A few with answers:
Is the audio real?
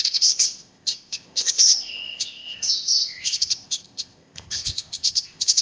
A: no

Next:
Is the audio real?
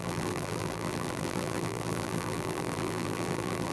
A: no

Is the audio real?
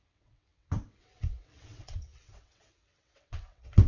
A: no